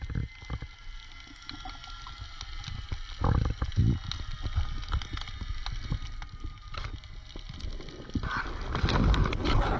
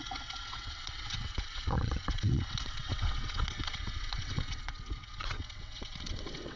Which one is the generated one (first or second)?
second